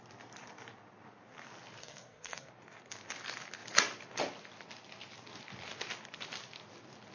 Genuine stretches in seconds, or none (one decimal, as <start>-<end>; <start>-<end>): 0.0-1.8; 2.5-7.1